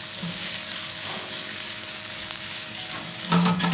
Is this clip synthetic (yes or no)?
yes